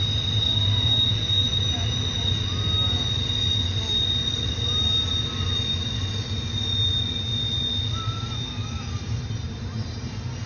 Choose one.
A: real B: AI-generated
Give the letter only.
A